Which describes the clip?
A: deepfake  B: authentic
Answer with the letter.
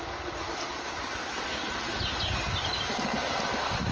B